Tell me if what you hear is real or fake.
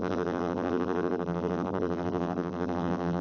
fake